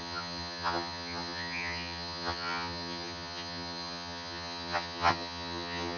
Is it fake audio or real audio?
fake